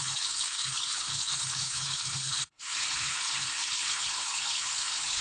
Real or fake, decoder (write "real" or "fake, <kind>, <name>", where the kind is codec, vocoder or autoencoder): fake, codec, HILCodec